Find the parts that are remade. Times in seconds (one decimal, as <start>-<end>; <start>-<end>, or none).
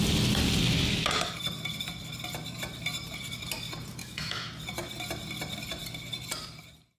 4.0-4.5